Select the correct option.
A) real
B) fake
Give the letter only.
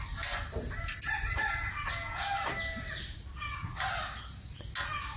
A